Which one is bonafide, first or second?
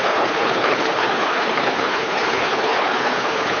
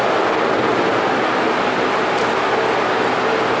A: second